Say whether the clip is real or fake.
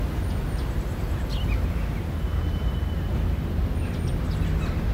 real